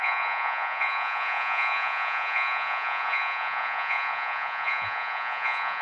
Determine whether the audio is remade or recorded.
remade